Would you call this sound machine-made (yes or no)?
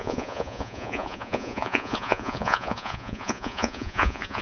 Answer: yes